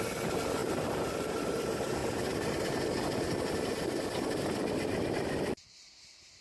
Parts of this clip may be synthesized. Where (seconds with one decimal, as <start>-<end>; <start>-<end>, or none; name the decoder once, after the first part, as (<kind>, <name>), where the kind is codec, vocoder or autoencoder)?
0.6-1.3 (vocoder, BigVGAN v2); 2.0-2.8